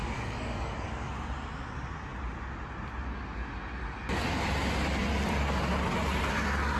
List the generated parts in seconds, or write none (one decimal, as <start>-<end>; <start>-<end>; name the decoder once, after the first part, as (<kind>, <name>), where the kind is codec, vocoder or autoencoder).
0.0-1.1 (codec, DAC)